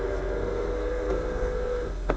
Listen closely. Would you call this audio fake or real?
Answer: fake